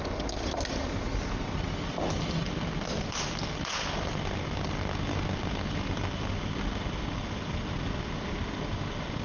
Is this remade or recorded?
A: recorded